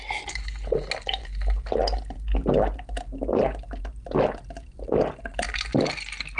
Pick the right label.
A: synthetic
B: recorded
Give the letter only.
B